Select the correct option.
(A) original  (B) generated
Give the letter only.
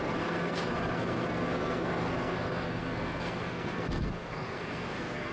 B